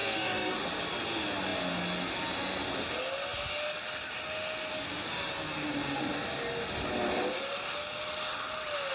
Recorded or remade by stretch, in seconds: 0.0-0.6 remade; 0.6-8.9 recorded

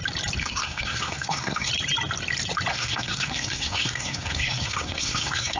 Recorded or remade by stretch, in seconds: 0.0-0.4 recorded; 0.4-1.7 remade; 1.7-2.7 recorded; 2.7-5.6 remade

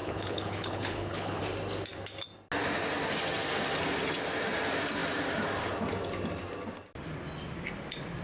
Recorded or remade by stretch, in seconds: 0.0-1.4 remade; 1.4-8.2 recorded

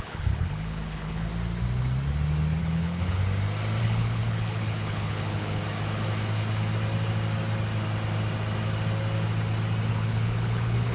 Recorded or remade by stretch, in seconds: 0.0-1.3 remade; 1.3-2.6 recorded; 2.6-3.2 remade; 3.2-3.8 recorded; 3.8-5.6 remade; 5.6-9.9 recorded; 9.9-10.9 remade

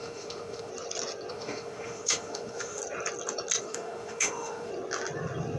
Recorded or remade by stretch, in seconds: 0.0-0.7 remade; 0.7-1.3 recorded; 1.3-2.8 remade; 2.8-3.6 recorded; 3.6-4.7 remade; 4.7-5.6 recorded

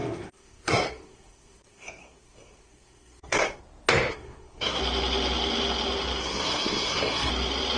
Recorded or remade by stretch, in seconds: 0.0-3.6 remade; 3.6-4.1 recorded; 4.1-4.8 remade; 4.8-6.2 recorded; 6.2-7.3 remade; 7.3-7.8 recorded